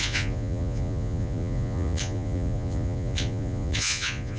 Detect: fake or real fake